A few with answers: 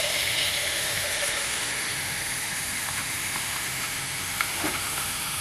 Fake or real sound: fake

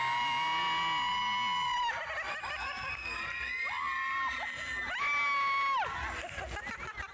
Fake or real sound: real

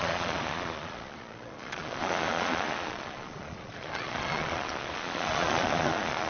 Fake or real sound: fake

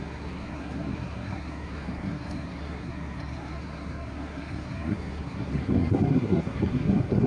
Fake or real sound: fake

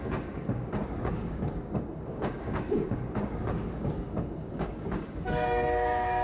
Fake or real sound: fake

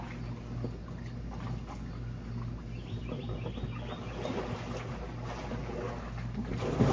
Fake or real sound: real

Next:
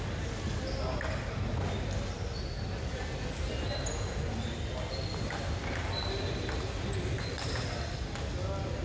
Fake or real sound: real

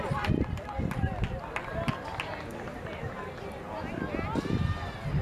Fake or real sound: real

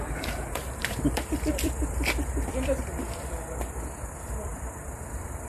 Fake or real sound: fake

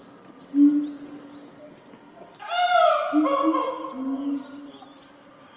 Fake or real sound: real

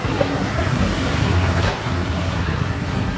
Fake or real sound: fake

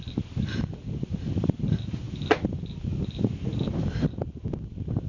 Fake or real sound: real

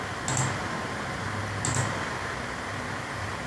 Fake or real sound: real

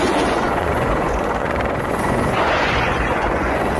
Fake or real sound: fake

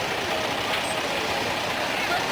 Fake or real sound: real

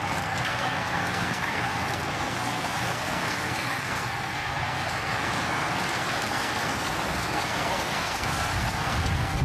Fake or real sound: fake